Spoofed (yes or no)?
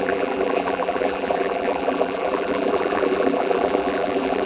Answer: yes